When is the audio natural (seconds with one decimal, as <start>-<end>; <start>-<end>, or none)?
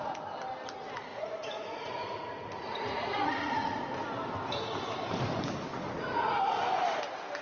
0.0-1.1; 3.8-5.7; 6.6-7.4